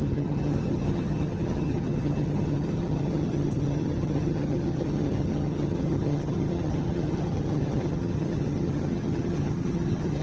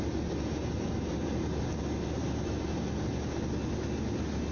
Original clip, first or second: second